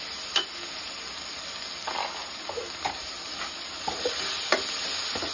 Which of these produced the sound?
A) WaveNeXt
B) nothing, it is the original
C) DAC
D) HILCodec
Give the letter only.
B